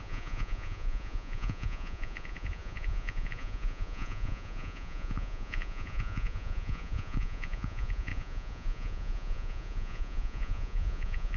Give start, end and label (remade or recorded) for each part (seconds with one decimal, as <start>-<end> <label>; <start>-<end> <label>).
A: 0.0-11.4 remade